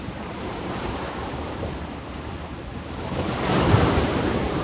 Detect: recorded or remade remade